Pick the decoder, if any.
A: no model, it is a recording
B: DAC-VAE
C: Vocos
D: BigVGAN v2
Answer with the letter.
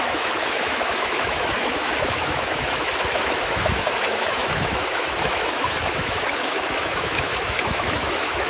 B